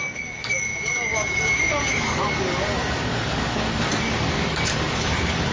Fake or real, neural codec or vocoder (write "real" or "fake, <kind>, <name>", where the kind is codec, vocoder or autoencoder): fake, codec, DAC